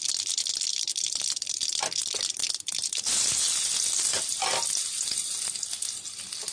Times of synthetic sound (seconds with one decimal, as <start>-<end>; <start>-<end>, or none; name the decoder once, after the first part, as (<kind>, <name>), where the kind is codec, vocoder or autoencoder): none